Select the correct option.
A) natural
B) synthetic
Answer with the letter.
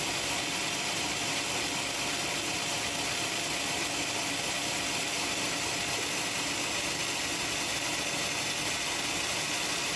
A